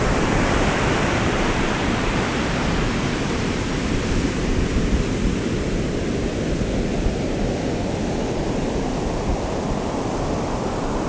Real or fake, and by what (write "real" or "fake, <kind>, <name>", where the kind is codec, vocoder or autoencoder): real